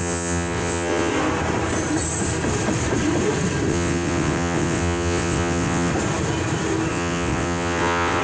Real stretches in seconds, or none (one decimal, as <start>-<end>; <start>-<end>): 1.1-3.7; 5.9-6.9